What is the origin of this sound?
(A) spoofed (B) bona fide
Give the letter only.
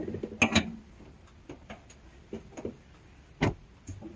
B